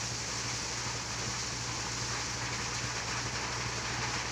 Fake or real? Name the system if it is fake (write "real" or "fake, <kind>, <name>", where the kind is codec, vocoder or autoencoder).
real